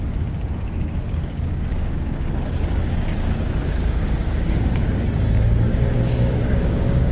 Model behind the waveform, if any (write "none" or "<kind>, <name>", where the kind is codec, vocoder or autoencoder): codec, DAC